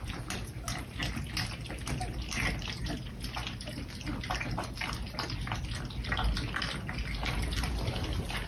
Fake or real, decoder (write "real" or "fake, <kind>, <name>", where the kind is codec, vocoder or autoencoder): real